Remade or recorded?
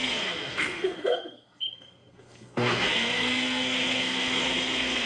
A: remade